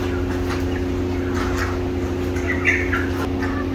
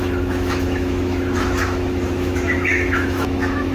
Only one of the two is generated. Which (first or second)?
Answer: second